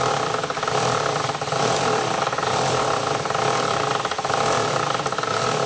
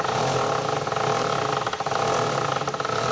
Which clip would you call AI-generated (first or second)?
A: first